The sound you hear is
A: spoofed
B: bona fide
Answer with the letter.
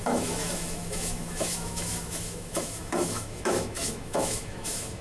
A